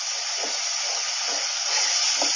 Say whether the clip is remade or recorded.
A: recorded